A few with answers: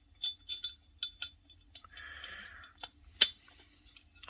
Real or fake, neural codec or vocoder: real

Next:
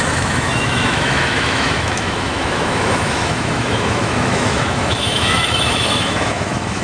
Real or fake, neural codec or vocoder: fake, autoencoder, DAC-VAE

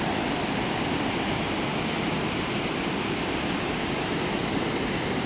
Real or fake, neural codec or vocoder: real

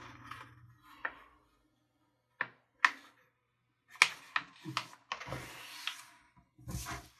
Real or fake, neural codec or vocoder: real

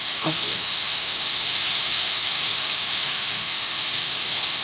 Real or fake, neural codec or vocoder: fake, autoencoder, DAC-VAE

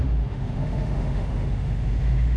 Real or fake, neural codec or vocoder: fake, autoencoder, DAC-VAE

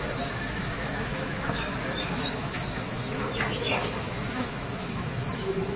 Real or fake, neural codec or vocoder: fake, autoencoder, DAC-VAE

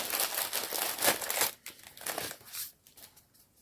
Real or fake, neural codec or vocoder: real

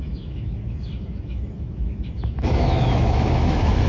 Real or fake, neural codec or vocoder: fake, autoencoder, DAC-VAE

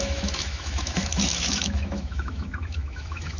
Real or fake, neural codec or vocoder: fake, autoencoder, DAC-VAE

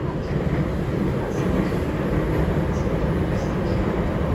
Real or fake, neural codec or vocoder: real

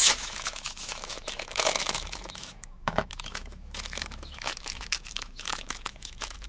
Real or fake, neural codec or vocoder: fake, autoencoder, DAC-VAE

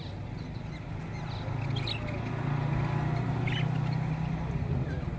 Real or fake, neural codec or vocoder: real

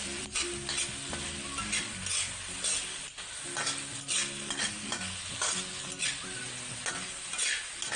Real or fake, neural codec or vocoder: real